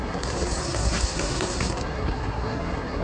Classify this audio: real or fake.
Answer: fake